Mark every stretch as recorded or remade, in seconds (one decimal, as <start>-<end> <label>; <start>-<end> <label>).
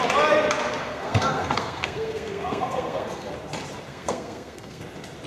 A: 0.0-0.8 recorded; 0.8-3.3 remade; 3.3-3.9 recorded; 3.9-4.8 remade; 4.8-5.3 recorded